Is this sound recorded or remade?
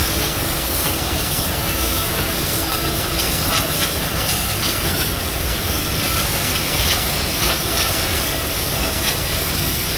remade